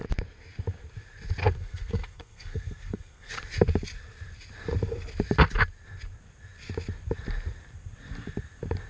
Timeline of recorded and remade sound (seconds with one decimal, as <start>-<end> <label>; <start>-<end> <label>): 0.0-1.4 recorded; 1.4-3.3 remade; 3.3-8.9 recorded